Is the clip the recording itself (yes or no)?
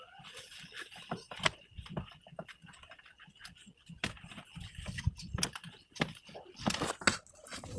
yes